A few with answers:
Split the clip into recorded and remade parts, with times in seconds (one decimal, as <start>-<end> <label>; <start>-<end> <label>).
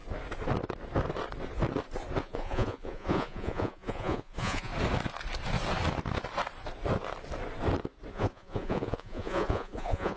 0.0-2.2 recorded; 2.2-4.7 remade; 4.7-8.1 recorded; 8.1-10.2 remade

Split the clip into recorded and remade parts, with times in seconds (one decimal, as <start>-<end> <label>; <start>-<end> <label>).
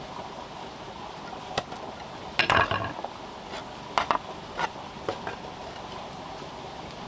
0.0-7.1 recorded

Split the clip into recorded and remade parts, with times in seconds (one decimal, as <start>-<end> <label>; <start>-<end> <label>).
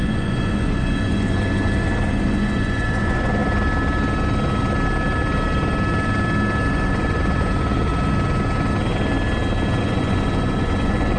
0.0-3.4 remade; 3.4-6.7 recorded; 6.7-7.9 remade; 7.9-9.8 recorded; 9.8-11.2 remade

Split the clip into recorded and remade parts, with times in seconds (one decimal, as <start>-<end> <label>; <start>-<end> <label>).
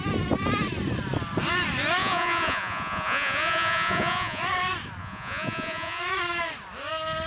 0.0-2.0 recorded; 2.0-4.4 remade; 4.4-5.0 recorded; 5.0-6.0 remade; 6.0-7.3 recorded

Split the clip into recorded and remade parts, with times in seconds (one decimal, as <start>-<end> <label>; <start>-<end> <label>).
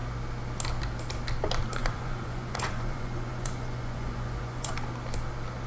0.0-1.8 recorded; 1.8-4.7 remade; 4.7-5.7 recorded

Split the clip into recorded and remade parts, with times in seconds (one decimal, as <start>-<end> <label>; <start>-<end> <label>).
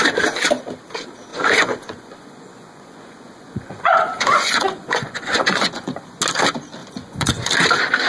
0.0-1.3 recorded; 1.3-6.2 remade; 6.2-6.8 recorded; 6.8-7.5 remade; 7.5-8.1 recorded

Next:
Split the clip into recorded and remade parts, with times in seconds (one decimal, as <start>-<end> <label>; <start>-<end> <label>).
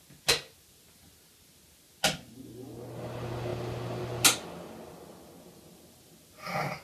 0.0-6.8 recorded